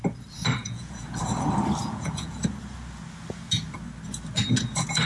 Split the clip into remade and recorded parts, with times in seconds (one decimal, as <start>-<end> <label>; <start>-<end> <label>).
0.0-0.6 recorded; 0.6-1.2 remade; 1.2-1.8 recorded; 1.8-2.4 remade; 2.4-5.1 recorded

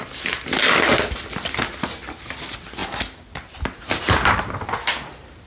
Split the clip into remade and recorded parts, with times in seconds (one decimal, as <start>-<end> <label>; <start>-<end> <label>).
0.0-5.5 recorded

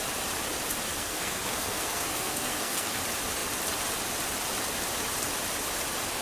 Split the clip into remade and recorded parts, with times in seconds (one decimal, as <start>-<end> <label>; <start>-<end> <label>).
0.0-0.9 recorded; 0.9-3.0 remade; 3.0-6.2 recorded

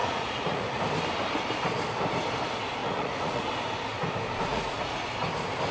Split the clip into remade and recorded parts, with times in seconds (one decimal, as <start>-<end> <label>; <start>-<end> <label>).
0.0-0.8 remade; 0.8-2.8 recorded; 2.8-3.5 remade; 3.5-4.5 recorded; 4.5-5.1 remade; 5.1-5.7 recorded

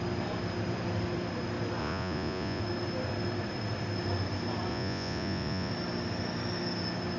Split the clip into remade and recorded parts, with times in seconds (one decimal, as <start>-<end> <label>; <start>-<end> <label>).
0.0-1.8 recorded; 1.8-2.6 remade; 2.6-4.7 recorded; 4.7-5.7 remade; 5.7-7.2 recorded

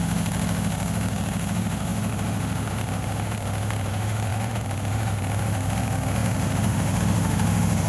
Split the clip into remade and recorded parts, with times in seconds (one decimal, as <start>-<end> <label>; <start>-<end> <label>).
0.0-7.9 remade